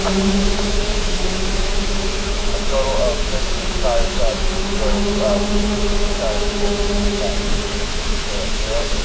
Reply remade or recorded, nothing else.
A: remade